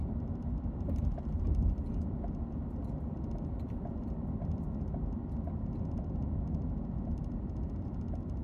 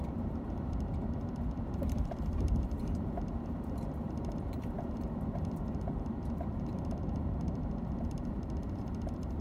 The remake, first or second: second